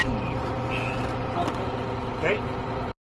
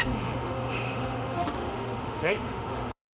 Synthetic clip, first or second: second